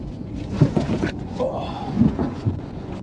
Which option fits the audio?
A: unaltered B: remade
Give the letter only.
B